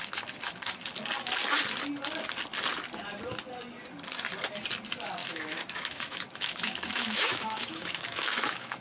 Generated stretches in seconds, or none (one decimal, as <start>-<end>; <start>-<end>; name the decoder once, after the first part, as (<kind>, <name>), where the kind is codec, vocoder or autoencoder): 5.2-8.8 (autoencoder, DAC-VAE)

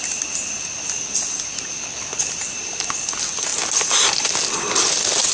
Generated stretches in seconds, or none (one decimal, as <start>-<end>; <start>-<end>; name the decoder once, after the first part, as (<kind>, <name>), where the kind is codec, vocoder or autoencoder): 1.8-2.3 (codec, HILCodec)

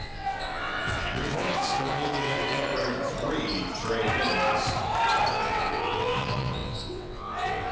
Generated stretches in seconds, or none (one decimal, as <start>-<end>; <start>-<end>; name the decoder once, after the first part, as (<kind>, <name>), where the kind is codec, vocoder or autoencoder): 0.0-2.7 (vocoder, WaveNeXt); 5.3-7.7

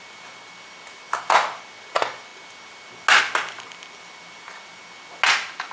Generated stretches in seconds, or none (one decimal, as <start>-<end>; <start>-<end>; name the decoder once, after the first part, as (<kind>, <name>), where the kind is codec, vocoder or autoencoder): none